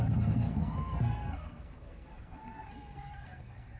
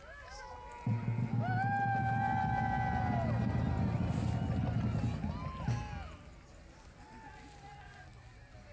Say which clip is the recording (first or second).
second